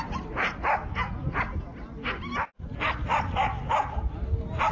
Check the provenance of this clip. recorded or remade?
recorded